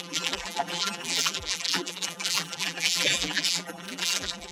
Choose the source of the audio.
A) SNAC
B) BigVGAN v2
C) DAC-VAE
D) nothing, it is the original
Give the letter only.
B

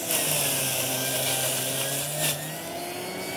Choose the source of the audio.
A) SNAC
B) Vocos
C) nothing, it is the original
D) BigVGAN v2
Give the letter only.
C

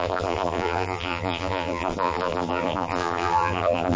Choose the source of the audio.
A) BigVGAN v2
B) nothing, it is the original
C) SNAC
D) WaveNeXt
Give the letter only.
A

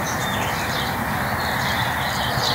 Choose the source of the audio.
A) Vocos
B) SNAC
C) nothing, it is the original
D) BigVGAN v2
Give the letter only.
C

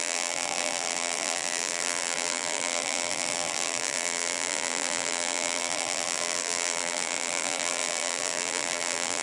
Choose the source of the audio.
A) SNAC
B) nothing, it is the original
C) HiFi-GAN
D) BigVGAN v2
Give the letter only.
D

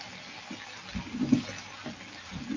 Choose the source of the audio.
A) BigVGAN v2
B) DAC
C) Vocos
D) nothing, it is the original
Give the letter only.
D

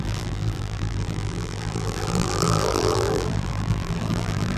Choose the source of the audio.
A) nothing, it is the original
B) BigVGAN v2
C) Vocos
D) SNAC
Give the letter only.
B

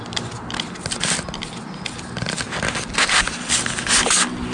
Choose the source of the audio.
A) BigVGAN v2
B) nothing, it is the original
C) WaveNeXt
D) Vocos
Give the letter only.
B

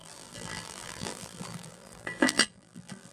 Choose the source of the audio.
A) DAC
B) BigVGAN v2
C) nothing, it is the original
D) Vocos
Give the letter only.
B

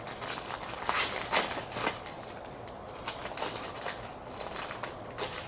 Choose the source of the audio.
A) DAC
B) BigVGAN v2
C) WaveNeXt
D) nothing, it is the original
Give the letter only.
D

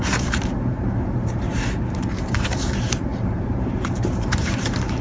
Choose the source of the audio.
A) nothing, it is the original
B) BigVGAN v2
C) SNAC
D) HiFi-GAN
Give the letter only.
B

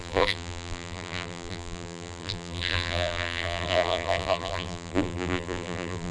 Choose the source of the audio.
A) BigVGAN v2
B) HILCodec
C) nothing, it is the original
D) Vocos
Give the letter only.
A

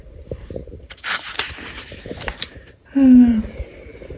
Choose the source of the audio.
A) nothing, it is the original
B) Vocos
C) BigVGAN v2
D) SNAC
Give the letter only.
C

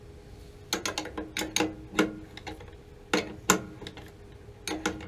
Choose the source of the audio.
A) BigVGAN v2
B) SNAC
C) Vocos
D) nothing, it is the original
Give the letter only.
D